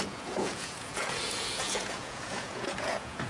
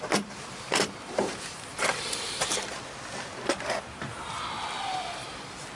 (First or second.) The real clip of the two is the second